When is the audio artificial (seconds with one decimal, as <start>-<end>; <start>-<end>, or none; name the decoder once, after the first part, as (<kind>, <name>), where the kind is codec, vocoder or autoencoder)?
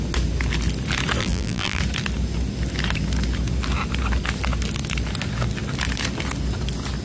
1.2-1.8 (vocoder, BigVGAN v2)